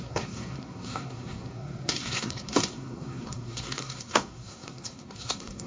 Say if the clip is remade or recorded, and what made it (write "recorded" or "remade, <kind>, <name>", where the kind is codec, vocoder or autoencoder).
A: remade, codec, SNAC